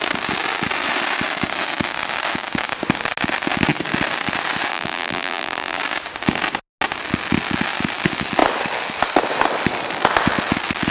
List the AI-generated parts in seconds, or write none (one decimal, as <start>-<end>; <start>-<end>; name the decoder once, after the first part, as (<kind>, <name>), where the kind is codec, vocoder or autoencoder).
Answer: 4.7-5.8 (vocoder, BigVGAN v2)